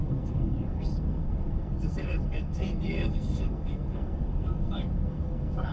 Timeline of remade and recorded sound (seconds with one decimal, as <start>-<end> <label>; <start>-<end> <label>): 0.0-5.7 remade